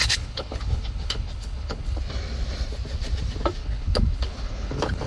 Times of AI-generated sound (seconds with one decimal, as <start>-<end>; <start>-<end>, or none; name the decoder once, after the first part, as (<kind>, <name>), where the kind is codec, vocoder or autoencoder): 0.0-2.0 (codec, HILCodec); 3.6-5.1